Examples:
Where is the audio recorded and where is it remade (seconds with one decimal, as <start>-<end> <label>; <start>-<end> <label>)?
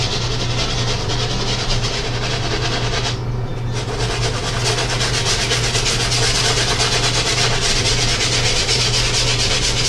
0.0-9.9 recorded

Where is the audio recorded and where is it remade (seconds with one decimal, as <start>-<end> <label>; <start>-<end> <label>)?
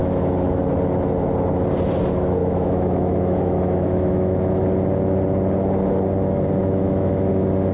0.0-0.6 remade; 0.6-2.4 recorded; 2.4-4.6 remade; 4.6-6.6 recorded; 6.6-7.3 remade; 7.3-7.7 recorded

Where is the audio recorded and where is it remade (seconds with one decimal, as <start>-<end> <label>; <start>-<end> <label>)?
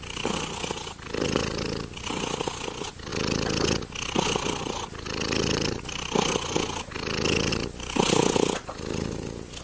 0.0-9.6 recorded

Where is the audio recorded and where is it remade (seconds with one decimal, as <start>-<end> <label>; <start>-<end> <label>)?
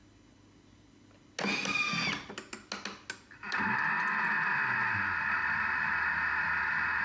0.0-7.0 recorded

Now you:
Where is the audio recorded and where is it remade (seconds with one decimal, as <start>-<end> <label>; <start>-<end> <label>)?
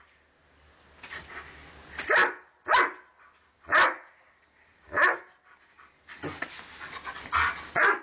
0.0-8.0 recorded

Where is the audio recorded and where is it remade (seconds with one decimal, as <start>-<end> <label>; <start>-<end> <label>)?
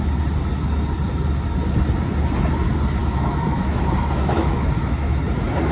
0.0-3.0 recorded; 3.0-5.2 remade; 5.2-5.7 recorded